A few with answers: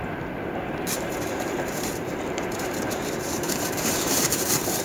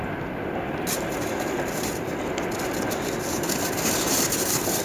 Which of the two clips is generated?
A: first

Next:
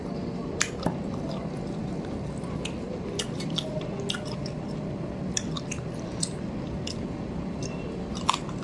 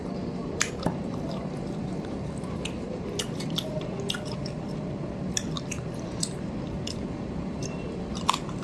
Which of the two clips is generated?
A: second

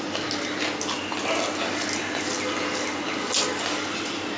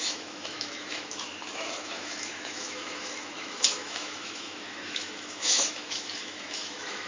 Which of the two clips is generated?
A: second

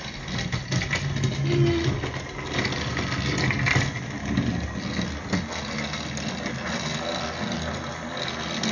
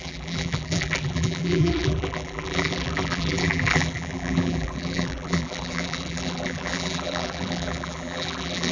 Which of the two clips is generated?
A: second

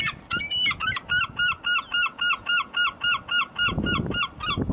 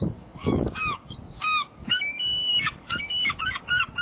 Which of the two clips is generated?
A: second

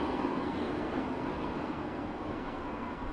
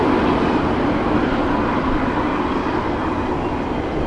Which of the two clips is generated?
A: first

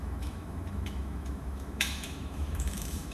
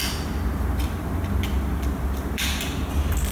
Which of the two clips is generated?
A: first